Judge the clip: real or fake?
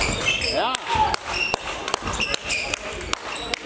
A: real